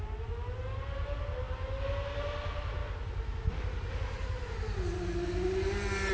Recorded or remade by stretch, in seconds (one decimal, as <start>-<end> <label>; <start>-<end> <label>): 0.0-6.1 recorded